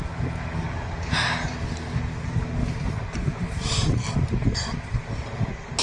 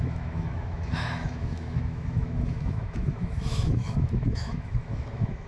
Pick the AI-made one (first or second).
second